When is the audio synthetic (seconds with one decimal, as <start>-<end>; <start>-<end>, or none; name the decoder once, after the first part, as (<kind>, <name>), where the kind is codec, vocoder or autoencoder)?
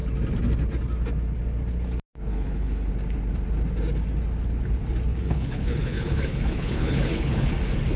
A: 2.3-2.9 (codec, HILCodec); 5.1-7.5